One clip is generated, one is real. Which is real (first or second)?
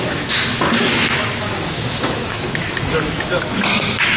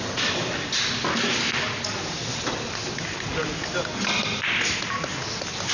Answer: second